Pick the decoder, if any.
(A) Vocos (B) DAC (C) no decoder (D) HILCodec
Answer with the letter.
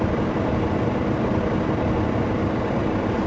C